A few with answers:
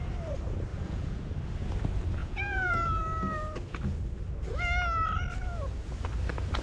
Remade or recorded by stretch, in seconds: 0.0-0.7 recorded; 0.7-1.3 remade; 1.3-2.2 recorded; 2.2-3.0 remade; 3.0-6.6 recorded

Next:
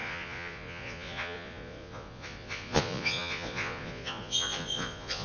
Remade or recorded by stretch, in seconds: 0.0-5.2 remade

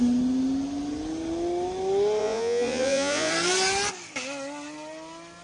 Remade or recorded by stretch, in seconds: 0.0-2.2 recorded; 2.2-3.3 remade; 3.3-5.4 recorded

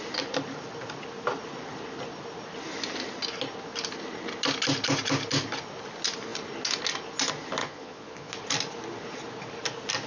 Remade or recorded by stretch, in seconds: 0.0-7.6 recorded; 7.6-8.3 remade; 8.3-10.1 recorded

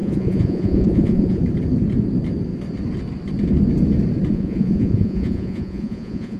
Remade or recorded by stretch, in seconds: 0.0-1.4 remade; 1.4-4.3 recorded; 4.3-6.4 remade

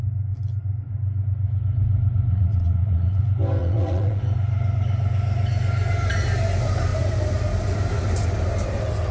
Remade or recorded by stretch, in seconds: 0.0-2.3 recorded; 2.3-3.2 remade; 3.2-3.6 recorded; 3.6-4.2 remade; 4.2-9.1 recorded

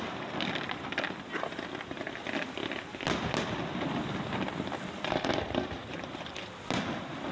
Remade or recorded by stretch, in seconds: 0.0-7.3 recorded

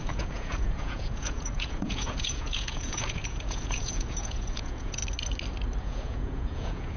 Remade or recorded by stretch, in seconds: 0.0-5.0 remade; 5.0-5.8 recorded; 5.8-7.0 remade